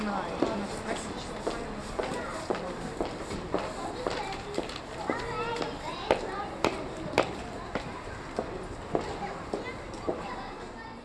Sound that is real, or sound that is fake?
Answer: real